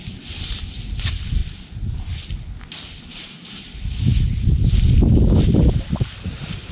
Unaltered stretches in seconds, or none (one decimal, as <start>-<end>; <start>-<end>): 1.4-3.0; 4.1-6.2